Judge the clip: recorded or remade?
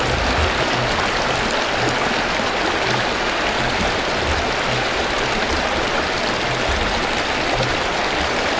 recorded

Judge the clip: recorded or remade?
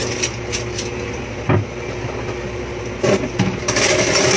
recorded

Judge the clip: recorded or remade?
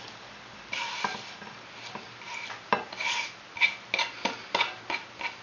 recorded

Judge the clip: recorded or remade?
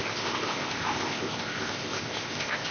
remade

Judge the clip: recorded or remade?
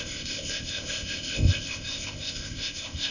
remade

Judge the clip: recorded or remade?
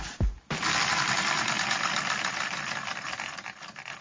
recorded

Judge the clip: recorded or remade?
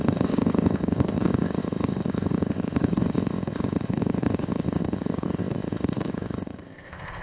remade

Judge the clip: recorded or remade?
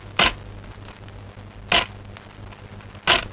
recorded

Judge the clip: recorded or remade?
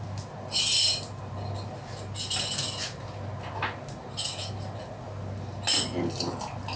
recorded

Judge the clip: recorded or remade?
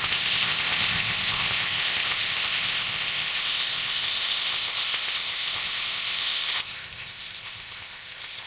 remade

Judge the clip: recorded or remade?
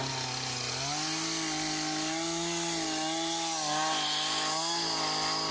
recorded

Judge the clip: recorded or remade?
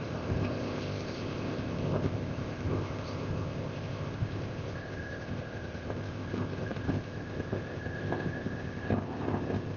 remade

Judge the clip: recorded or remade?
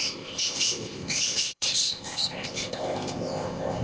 remade